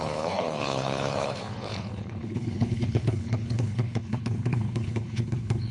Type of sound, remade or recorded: remade